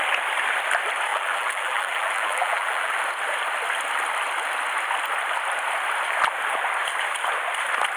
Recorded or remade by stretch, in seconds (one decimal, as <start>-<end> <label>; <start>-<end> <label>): 0.0-1.1 recorded; 1.1-2.9 remade; 2.9-8.0 recorded